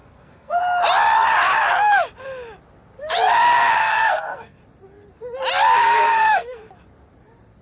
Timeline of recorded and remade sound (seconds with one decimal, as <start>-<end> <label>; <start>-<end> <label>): 0.0-0.6 remade; 0.6-3.8 recorded; 3.8-4.6 remade; 4.6-5.8 recorded; 5.8-6.6 remade; 6.6-7.6 recorded